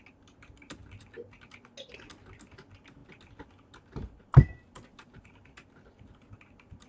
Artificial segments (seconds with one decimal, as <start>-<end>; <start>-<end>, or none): 0.0-0.8; 1.9-6.9